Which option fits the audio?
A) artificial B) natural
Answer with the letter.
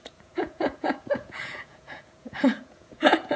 A